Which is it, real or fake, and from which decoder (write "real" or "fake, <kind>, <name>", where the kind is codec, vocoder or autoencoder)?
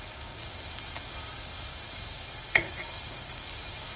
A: fake, codec, DAC